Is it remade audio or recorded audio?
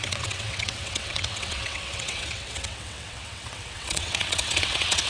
remade